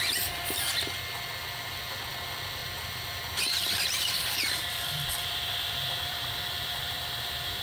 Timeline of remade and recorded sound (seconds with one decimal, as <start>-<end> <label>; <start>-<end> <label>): 0.0-0.7 remade; 0.7-1.7 recorded; 1.7-7.6 remade